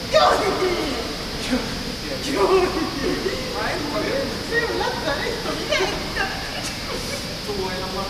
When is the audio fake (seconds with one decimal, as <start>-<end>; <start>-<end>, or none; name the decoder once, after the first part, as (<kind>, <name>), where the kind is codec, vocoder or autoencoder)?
none